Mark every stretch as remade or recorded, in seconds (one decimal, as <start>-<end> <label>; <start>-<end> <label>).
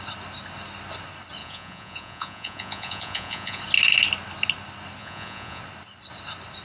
0.0-1.4 recorded; 1.4-3.6 remade; 3.6-5.0 recorded; 5.0-5.6 remade; 5.6-6.6 recorded